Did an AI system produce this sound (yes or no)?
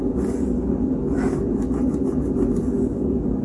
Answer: no